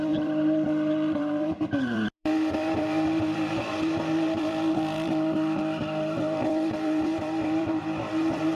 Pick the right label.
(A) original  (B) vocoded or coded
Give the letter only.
B